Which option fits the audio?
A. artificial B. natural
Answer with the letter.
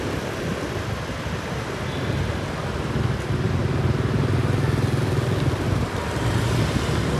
B